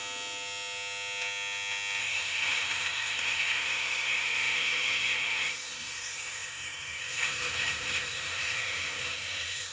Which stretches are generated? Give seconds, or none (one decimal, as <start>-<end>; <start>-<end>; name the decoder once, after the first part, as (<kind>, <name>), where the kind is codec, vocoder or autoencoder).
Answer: 2.0-9.7 (codec, SNAC)